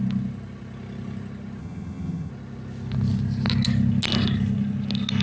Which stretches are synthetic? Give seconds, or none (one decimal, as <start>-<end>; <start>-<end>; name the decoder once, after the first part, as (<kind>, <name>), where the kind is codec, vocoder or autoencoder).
1.6-2.3 (vocoder, HiFi-GAN)